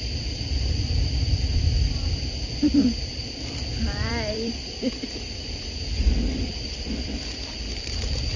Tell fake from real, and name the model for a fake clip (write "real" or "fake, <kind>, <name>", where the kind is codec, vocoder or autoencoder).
fake, vocoder, BigVGAN v2